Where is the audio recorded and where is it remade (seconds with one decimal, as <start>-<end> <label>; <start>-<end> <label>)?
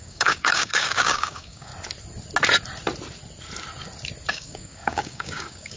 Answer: 0.0-1.7 remade; 1.7-4.3 recorded; 4.3-5.8 remade